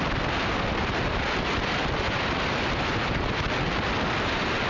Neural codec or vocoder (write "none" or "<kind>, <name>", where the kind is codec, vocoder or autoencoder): none